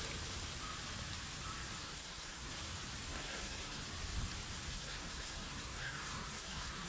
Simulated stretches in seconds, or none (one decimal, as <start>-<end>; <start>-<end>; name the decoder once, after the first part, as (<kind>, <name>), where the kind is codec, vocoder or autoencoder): 1.8-2.5 (codec, SNAC); 3.1-3.8; 4.7-6.9